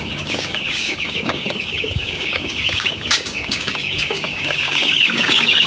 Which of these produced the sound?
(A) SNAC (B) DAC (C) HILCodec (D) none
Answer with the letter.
B